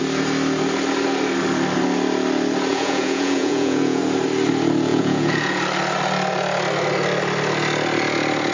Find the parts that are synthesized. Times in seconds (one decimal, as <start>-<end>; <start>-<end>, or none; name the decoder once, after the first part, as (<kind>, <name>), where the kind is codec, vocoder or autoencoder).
2.7-4.0 (vocoder, Vocos); 4.9-5.6